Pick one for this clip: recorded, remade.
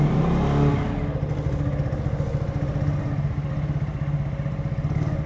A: recorded